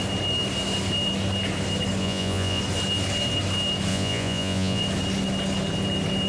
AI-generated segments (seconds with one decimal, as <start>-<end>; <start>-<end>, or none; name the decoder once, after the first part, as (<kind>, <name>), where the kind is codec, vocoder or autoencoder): 2.0-2.6 (vocoder, Vocos); 3.9-4.8